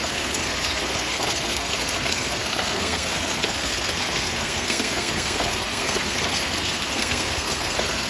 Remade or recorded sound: remade